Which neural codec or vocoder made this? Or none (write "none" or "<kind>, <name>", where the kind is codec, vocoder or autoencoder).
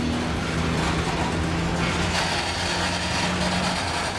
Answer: none